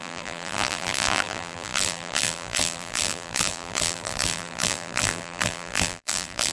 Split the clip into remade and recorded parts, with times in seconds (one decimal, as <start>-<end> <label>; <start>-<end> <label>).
0.0-6.5 remade